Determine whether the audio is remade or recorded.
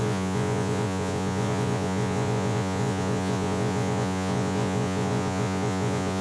remade